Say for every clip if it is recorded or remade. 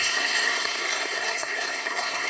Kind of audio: remade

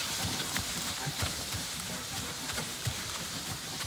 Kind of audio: remade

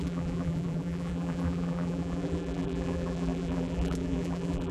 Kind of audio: remade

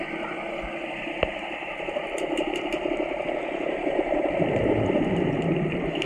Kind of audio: recorded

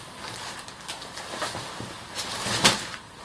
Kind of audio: recorded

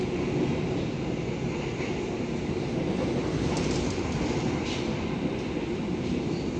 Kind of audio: recorded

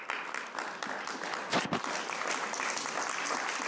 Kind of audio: recorded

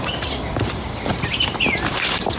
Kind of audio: remade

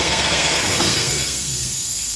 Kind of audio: remade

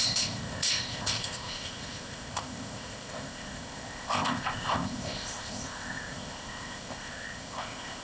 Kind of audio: remade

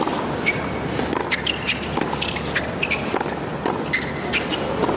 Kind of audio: recorded